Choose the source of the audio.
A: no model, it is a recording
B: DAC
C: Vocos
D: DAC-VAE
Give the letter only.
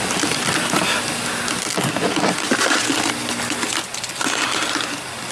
A